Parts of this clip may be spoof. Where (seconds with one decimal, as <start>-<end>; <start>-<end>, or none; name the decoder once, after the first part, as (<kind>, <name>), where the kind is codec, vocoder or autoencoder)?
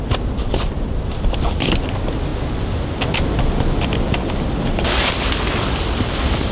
none